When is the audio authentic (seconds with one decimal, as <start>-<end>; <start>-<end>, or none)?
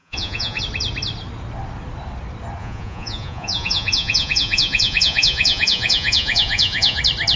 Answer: 0.6-2.6; 7.0-7.4